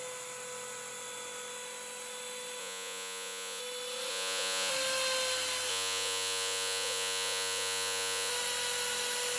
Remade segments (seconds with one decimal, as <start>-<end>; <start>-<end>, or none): 2.6-3.6; 4.1-4.7; 5.7-8.3